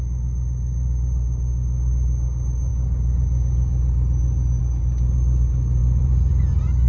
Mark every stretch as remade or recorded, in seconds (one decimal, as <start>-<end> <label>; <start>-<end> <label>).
0.0-5.8 recorded; 5.8-6.3 remade; 6.3-6.9 recorded